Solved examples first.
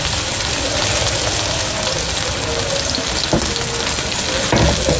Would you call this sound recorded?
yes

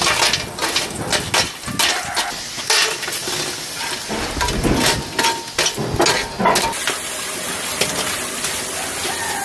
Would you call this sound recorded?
yes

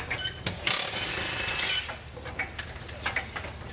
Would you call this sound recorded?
yes